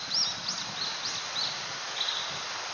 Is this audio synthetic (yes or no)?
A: no